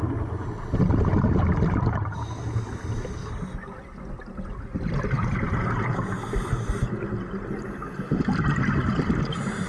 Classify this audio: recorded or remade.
recorded